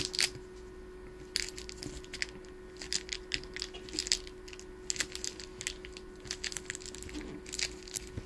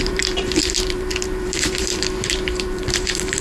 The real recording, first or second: first